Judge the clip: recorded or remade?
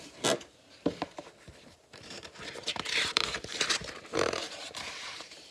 remade